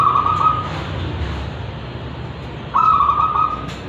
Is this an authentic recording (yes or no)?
yes